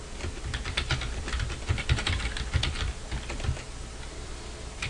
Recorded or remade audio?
recorded